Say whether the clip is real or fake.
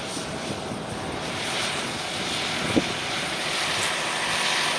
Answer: real